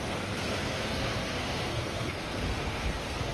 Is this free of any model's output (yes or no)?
no